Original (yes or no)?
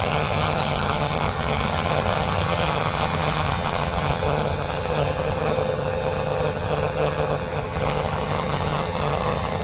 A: no